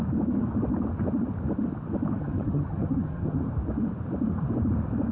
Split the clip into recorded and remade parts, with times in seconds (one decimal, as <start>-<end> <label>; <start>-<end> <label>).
0.0-2.2 recorded; 2.2-3.5 remade; 3.5-5.1 recorded